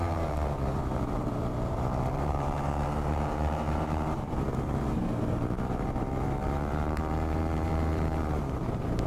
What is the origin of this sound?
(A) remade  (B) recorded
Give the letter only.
A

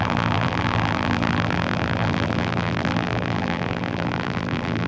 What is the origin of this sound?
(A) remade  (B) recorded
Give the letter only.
A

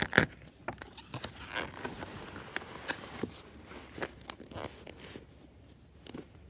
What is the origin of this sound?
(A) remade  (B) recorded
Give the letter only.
B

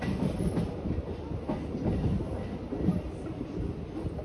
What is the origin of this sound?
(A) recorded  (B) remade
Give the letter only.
A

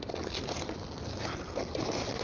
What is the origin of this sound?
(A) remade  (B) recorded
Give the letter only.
B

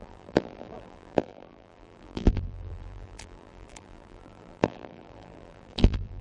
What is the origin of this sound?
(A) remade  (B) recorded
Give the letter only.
A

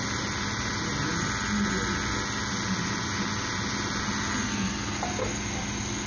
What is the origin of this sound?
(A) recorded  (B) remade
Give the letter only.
A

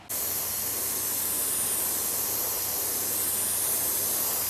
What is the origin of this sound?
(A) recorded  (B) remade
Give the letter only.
A